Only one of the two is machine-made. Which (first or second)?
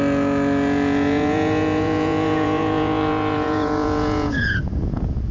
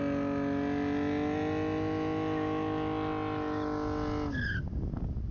first